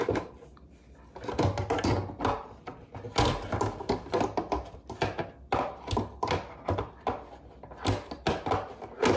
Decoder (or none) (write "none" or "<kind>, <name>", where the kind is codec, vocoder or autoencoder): none